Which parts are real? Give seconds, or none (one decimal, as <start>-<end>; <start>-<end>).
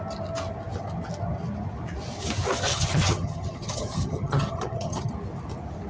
0.0-2.7; 5.1-5.9